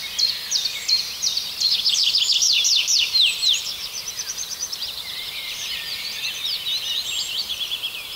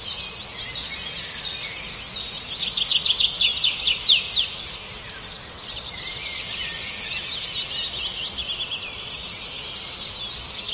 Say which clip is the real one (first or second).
second